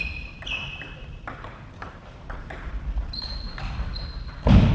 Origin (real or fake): fake